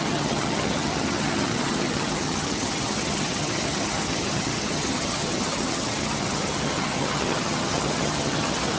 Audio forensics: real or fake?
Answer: fake